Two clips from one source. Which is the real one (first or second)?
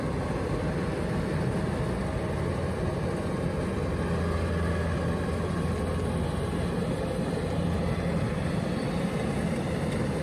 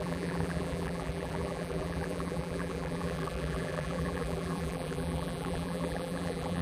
first